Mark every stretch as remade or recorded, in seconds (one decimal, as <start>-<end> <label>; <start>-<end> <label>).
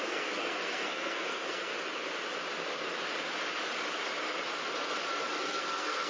0.0-1.7 remade; 1.7-5.4 recorded; 5.4-6.1 remade